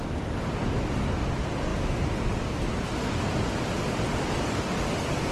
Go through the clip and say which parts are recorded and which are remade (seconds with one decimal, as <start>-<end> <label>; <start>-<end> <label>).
0.0-5.3 recorded